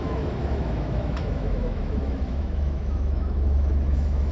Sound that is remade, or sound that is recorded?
remade